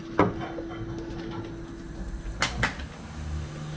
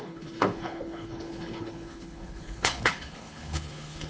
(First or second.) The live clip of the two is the first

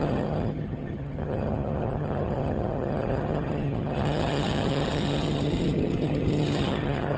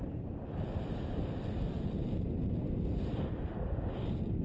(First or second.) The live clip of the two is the second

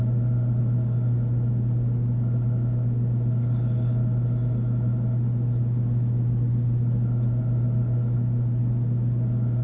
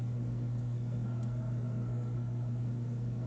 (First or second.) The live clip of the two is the first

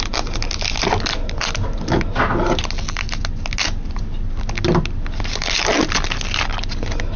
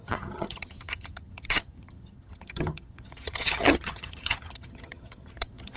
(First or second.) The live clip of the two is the first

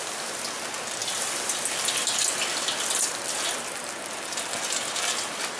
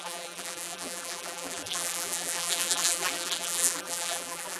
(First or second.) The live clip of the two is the first